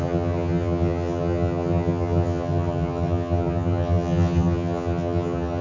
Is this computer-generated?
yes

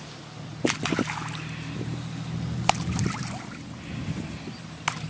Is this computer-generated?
no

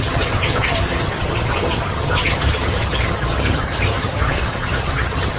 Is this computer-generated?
yes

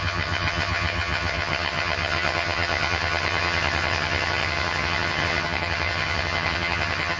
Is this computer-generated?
yes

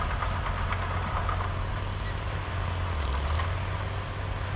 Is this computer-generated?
no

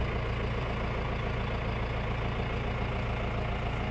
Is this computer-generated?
no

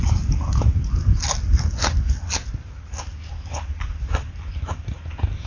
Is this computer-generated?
no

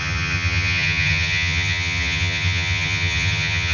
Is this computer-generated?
yes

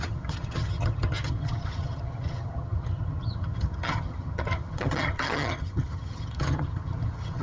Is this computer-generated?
yes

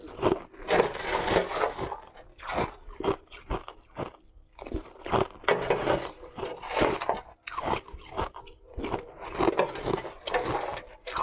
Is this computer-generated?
no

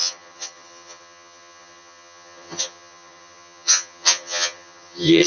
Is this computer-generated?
yes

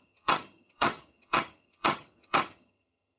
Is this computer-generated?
yes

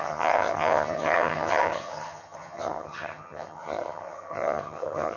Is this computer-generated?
yes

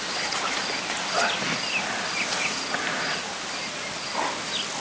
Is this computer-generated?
no